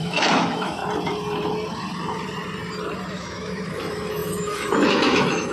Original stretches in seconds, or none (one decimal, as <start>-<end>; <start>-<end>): 0.8-3.1